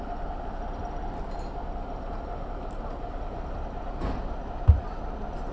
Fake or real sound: real